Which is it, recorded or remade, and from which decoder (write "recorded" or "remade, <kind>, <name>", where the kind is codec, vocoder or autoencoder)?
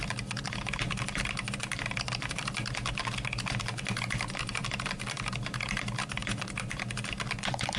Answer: recorded